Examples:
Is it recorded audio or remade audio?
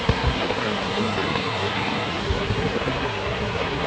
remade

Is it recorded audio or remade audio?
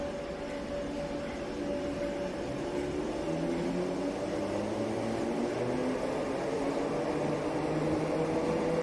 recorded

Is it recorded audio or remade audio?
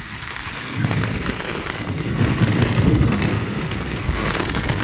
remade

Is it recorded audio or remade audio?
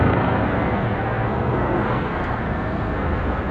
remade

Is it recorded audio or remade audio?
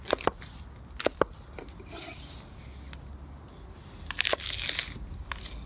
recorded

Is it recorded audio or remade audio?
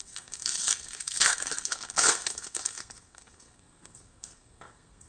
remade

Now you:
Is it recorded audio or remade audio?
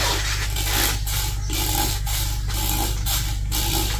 recorded